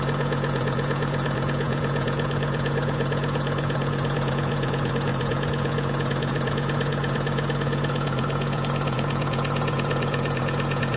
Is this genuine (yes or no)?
no